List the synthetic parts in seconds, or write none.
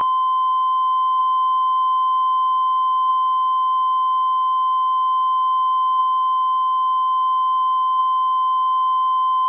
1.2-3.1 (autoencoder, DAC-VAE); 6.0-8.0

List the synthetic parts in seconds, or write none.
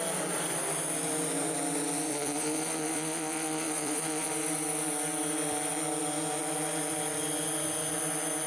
2.1-4.3 (vocoder, Vocos)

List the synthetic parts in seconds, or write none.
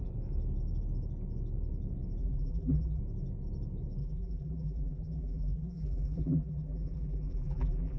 2.2-3.0 (vocoder, BigVGAN v2); 4.0-8.0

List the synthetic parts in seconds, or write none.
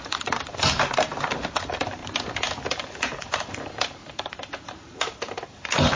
0.0-2.0 (vocoder, BigVGAN v2); 2.7-6.0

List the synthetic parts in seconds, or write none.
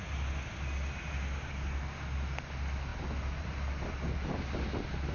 none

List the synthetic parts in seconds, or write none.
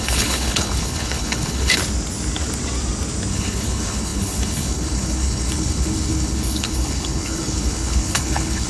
0.0-1.8 (codec, HILCodec); 3.3-8.7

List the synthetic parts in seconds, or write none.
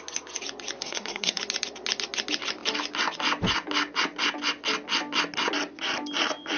0.8-1.4 (codec, SNAC)